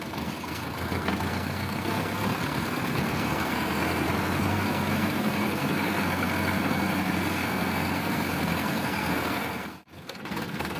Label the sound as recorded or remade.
remade